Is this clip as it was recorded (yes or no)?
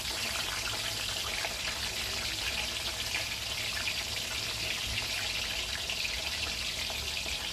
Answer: yes